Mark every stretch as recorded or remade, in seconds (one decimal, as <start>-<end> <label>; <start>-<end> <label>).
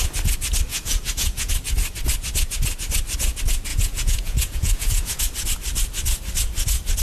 0.0-0.7 recorded; 0.7-1.5 remade; 1.5-3.7 recorded; 3.7-5.2 remade; 5.2-7.0 recorded